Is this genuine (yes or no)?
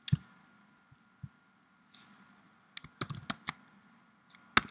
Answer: yes